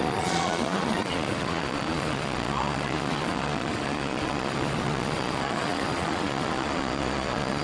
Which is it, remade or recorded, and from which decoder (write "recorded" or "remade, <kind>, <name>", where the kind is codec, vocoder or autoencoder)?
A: remade, vocoder, Vocos